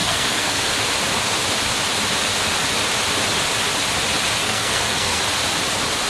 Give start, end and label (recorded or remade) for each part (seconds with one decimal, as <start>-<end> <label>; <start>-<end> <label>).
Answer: 0.0-0.7 remade; 0.7-4.4 recorded; 4.4-5.2 remade; 5.2-6.1 recorded